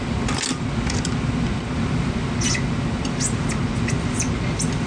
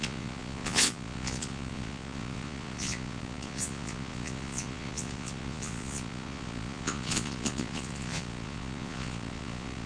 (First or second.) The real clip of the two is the first